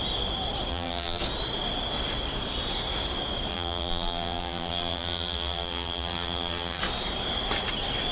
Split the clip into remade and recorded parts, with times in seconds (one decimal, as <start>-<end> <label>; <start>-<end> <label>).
0.0-0.7 recorded; 0.7-1.2 remade; 1.2-3.5 recorded; 3.5-6.8 remade; 6.8-8.1 recorded